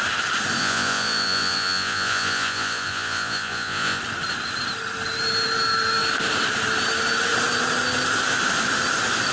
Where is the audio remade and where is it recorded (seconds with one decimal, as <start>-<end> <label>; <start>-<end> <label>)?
0.0-0.6 recorded; 0.6-4.0 remade; 4.0-9.3 recorded